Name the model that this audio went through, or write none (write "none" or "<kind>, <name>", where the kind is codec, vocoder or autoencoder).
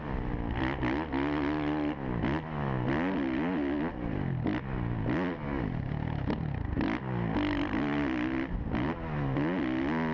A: none